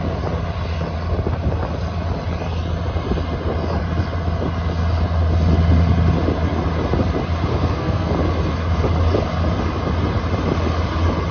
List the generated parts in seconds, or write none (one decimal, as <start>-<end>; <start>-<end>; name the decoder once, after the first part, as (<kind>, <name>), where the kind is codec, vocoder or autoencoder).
7.5-8.1 (codec, SNAC)